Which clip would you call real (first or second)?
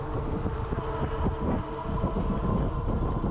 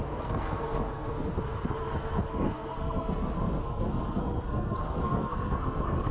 first